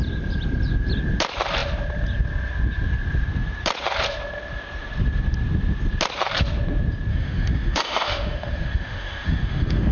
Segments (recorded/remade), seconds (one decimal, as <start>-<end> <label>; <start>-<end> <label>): 0.0-7.1 recorded; 7.1-9.9 remade